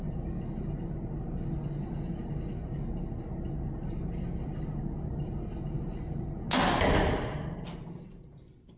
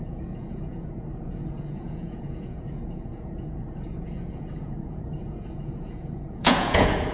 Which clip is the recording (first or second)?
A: first